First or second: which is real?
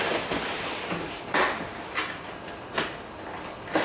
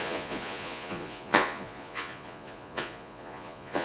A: first